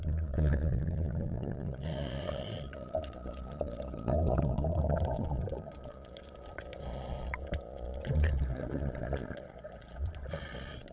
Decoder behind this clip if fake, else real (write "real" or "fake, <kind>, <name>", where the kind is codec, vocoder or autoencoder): fake, vocoder, Vocos